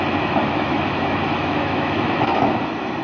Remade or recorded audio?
remade